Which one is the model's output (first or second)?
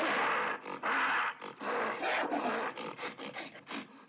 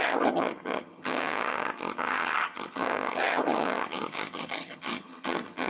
second